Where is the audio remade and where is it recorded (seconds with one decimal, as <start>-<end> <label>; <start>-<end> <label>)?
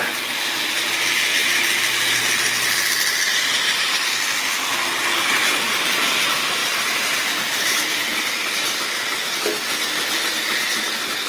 0.0-3.3 recorded; 3.3-4.1 remade; 4.1-6.6 recorded; 6.6-8.2 remade; 8.2-11.3 recorded